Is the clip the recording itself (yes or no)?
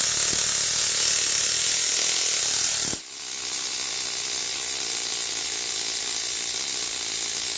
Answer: yes